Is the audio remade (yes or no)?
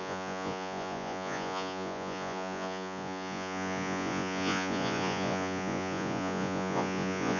yes